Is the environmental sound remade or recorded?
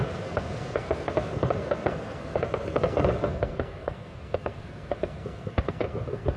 remade